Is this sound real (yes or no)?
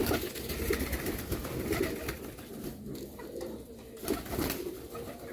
yes